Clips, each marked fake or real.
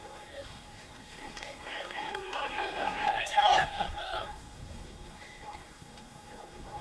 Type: fake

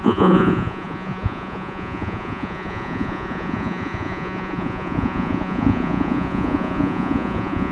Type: fake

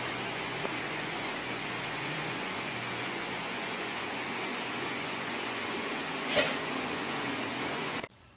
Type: fake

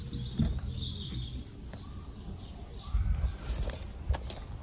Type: real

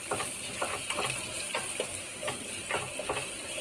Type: real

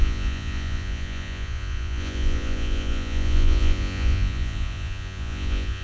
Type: fake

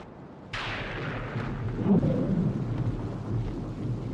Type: real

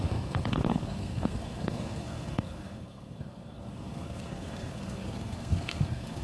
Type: fake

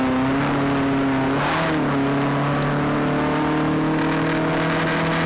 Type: real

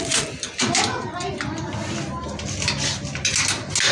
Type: real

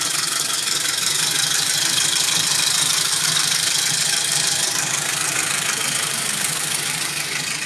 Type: fake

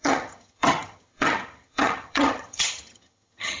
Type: fake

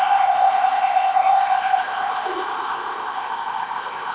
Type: fake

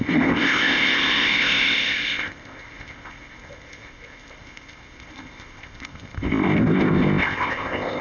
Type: fake